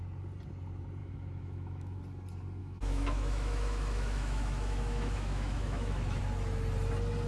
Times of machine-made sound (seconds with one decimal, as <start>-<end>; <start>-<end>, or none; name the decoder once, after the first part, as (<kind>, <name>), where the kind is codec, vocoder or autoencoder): 1.0-2.0 (autoencoder, DAC-VAE); 2.6-6.2